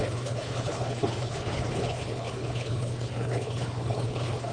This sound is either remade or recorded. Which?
remade